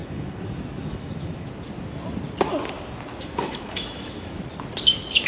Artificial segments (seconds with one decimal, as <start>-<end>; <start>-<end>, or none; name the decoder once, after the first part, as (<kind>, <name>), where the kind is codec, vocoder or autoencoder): 0.0-1.5 (autoencoder, DAC-VAE); 3.1-4.4